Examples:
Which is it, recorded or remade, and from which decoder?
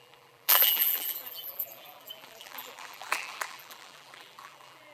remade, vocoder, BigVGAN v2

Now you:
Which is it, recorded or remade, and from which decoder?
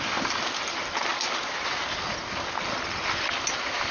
recorded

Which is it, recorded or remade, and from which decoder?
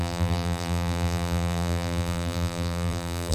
remade, vocoder, BigVGAN v2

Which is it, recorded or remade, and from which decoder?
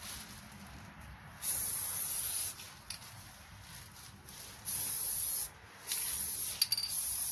recorded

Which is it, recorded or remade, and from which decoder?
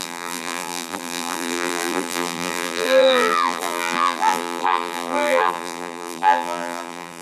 remade, vocoder, BigVGAN v2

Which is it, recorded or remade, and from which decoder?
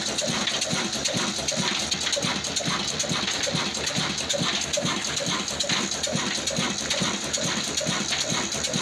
recorded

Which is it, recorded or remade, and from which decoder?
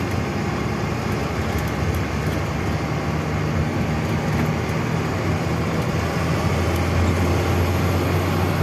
recorded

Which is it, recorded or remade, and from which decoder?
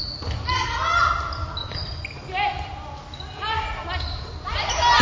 recorded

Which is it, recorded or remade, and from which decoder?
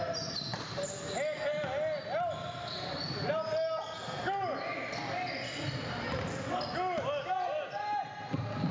recorded